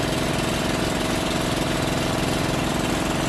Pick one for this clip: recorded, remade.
recorded